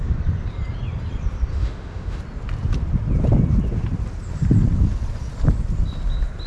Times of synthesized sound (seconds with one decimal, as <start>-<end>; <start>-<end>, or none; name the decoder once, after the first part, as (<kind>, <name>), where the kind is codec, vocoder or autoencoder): 1.5-2.2 (autoencoder, DAC-VAE)